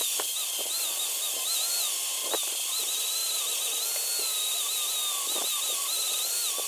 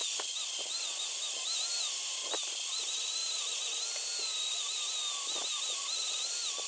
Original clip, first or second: first